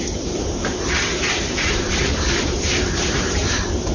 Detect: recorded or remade remade